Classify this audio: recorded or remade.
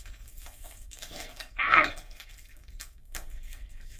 remade